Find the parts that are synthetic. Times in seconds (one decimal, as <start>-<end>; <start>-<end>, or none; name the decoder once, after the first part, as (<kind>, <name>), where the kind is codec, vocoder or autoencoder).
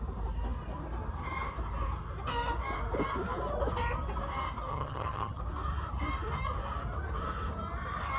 4.7-5.4 (vocoder, HiFi-GAN)